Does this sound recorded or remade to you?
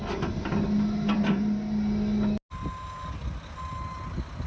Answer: recorded